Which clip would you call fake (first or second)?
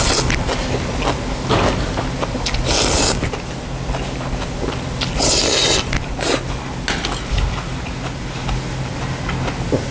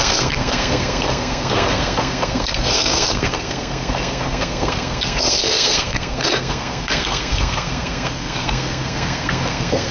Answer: second